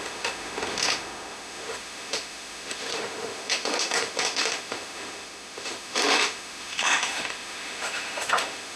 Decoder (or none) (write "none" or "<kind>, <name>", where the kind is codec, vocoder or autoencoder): autoencoder, DAC-VAE